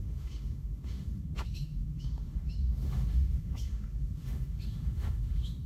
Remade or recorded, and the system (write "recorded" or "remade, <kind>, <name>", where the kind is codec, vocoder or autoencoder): remade, autoencoder, DAC-VAE